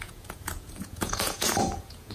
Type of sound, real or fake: fake